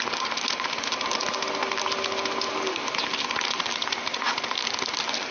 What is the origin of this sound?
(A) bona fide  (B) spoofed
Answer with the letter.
A